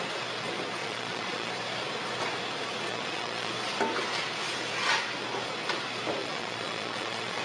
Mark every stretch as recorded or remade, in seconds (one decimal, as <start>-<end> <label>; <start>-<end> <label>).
0.0-0.8 recorded; 0.8-1.5 remade; 1.5-2.9 recorded; 2.9-3.5 remade; 3.5-6.2 recorded; 6.2-7.4 remade